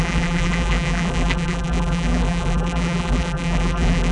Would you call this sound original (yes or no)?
no